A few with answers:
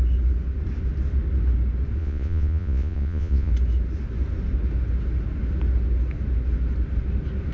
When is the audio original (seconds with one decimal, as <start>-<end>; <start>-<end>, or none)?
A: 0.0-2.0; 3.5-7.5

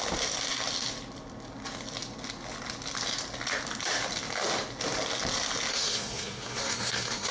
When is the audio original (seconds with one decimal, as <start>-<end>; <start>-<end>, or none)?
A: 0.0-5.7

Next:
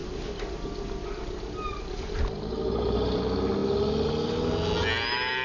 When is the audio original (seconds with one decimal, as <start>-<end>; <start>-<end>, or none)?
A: 3.2-5.4